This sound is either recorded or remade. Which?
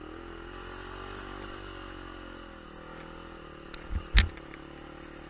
recorded